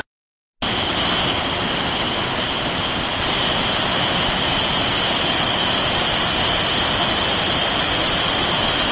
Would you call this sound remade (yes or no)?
no